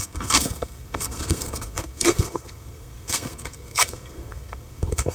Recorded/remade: remade